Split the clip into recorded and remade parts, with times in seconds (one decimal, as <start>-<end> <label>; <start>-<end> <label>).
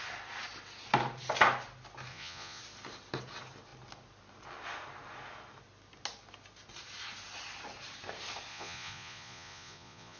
0.0-2.1 recorded; 2.1-2.6 remade; 2.6-8.5 recorded; 8.5-10.2 remade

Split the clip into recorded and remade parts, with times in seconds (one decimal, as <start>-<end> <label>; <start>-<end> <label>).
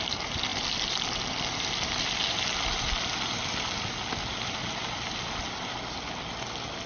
0.0-6.9 recorded